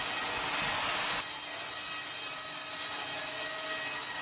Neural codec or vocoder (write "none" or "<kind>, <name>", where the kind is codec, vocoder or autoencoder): none